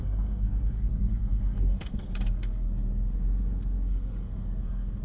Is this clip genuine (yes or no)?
no